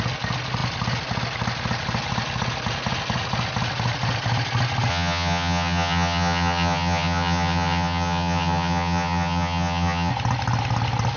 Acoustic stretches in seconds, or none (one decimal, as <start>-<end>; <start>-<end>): 0.0-4.9; 10.1-11.2